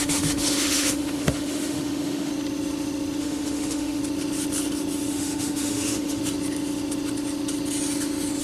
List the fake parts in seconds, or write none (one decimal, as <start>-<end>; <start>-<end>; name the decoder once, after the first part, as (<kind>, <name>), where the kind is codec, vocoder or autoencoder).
0.0-2.3 (autoencoder, DAC-VAE); 3.2-4.0; 5.1-6.2